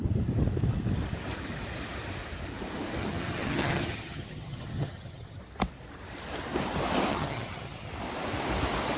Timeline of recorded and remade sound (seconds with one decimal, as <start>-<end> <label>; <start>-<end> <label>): 0.0-3.0 recorded; 3.0-5.4 remade; 5.4-7.1 recorded; 7.1-7.9 remade; 7.9-9.0 recorded